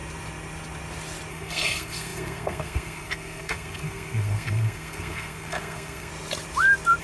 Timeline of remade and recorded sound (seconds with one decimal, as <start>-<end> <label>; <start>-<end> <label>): 0.0-1.3 recorded; 1.3-6.1 remade; 6.1-7.0 recorded